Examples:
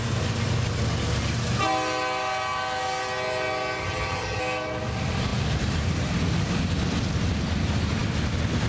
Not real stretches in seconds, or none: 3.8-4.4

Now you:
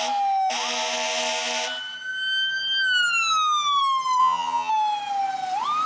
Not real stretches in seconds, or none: 4.2-4.7